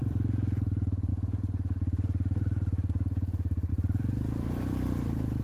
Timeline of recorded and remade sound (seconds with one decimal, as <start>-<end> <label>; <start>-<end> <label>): 0.0-1.1 remade; 1.1-3.7 recorded; 3.7-5.4 remade